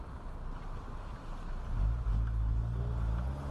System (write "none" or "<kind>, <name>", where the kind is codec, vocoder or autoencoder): none